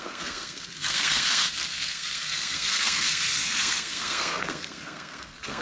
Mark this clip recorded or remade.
remade